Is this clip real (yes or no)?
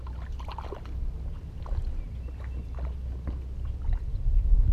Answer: yes